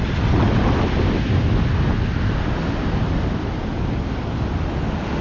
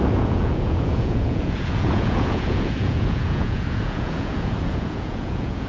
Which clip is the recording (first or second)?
first